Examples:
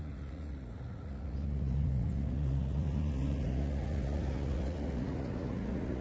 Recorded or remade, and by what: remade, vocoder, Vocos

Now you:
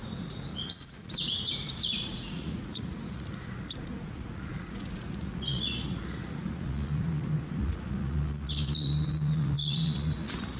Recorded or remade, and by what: remade, vocoder, Vocos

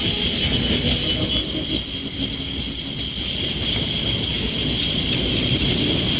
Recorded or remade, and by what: recorded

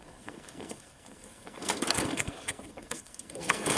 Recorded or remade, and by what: remade, codec, SNAC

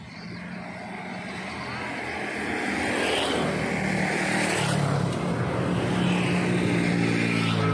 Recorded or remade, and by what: recorded